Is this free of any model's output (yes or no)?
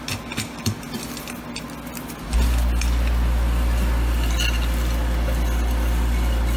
yes